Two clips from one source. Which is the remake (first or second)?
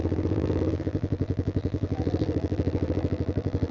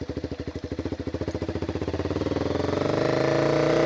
first